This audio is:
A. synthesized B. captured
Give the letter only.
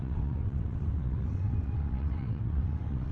A